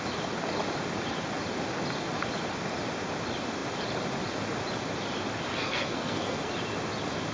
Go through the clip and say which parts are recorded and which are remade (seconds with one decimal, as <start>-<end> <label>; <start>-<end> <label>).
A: 0.0-5.5 recorded; 5.5-6.5 remade; 6.5-7.3 recorded